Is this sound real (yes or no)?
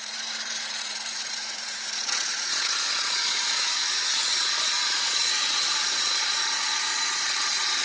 no